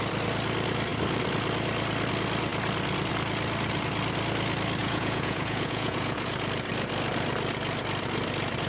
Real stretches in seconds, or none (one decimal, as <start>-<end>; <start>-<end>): 0.0-4.8; 6.3-8.7